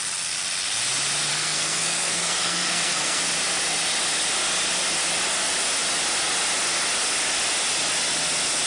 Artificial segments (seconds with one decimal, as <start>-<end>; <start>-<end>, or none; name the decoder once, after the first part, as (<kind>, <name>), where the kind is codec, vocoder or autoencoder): 1.3-3.2 (codec, SNAC)